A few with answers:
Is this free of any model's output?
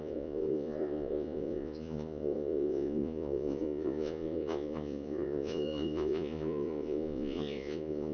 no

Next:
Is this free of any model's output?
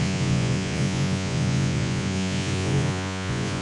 no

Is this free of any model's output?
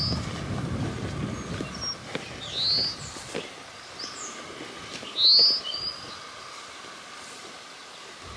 yes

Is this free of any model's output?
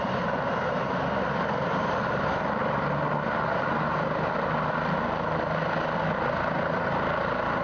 yes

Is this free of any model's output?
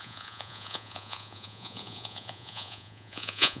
no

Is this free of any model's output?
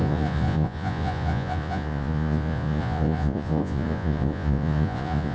no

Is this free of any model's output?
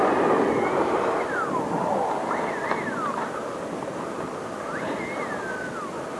yes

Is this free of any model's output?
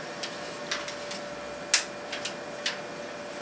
yes